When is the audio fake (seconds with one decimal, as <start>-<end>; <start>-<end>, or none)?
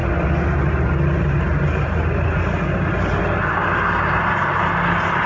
none